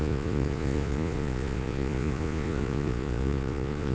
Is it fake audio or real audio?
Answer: fake